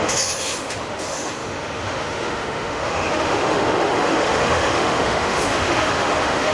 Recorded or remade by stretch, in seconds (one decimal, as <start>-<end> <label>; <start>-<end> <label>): 0.0-6.5 remade